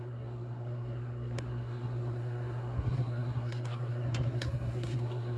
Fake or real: fake